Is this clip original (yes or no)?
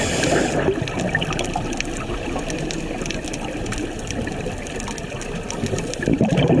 yes